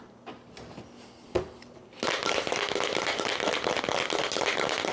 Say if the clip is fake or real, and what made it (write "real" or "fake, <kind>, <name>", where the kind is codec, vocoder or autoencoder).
real